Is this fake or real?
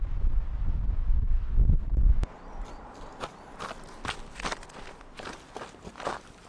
real